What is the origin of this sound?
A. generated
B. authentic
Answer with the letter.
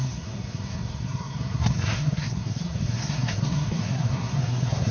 A